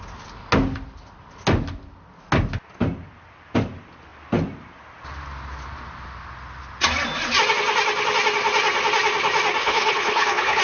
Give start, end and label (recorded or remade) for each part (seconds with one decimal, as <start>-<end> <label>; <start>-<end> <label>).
0.0-9.6 recorded; 9.6-10.6 remade